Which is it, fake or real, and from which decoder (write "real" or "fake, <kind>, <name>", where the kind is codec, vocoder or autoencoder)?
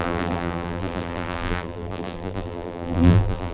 fake, vocoder, BigVGAN v2